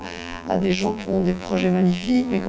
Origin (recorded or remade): remade